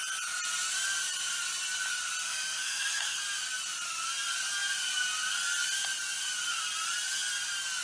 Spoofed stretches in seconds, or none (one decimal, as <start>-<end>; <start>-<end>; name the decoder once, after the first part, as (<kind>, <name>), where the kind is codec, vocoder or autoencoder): 2.2-3.2 (codec, SNAC)